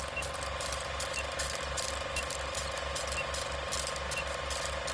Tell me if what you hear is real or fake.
real